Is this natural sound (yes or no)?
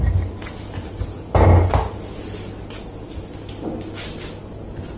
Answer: yes